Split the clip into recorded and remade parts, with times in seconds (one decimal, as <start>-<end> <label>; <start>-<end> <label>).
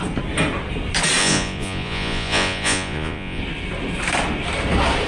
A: 0.0-1.2 recorded; 1.2-3.4 remade; 3.4-5.1 recorded